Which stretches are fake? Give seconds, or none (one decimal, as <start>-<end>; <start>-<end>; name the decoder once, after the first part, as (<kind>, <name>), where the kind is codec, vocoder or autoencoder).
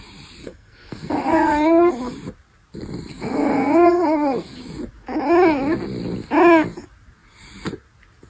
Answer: 0.4-1.9 (codec, SNAC); 3.1-4.6